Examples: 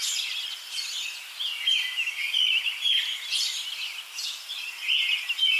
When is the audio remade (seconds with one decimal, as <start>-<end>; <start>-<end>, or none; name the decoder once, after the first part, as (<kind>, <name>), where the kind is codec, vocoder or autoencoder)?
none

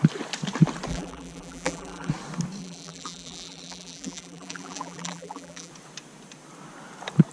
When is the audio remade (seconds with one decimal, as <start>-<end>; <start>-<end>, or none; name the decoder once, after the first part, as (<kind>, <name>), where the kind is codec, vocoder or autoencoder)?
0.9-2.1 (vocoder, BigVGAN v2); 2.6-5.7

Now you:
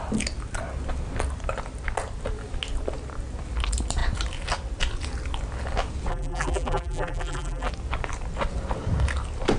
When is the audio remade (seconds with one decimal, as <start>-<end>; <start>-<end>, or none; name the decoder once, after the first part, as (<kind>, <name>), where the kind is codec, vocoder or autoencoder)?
6.1-7.7 (vocoder, BigVGAN v2)